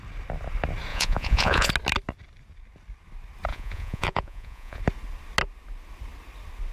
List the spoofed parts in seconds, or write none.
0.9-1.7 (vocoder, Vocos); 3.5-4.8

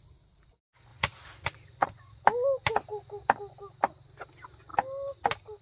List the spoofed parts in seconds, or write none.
0.9-2.2 (vocoder, Vocos)

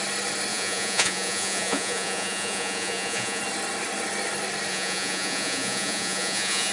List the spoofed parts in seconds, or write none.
0.5-3.4 (vocoder, Vocos); 4.7-6.7